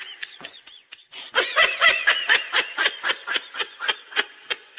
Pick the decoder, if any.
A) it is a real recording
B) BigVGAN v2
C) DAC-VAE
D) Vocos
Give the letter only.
D